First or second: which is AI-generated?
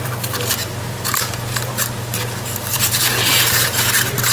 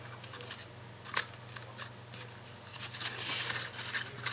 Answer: first